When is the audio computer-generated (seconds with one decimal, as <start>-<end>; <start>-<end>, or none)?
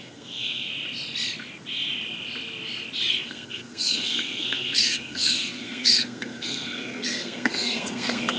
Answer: 0.0-0.7; 3.1-8.4